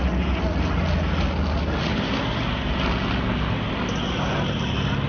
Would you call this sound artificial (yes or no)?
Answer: no